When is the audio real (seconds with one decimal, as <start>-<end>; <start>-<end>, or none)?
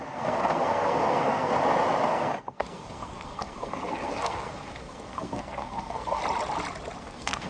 1.5-2.1; 6.2-7.0